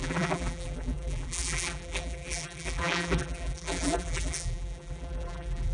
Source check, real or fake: fake